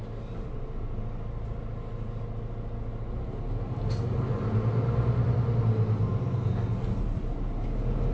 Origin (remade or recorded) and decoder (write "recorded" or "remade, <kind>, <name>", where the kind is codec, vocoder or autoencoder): recorded